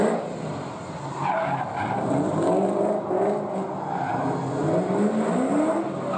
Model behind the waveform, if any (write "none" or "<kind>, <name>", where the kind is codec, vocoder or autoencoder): none